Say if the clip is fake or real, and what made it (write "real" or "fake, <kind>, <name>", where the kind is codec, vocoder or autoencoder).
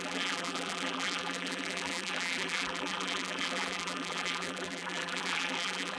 fake, vocoder, BigVGAN v2